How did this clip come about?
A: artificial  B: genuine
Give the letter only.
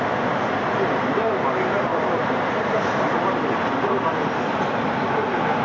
B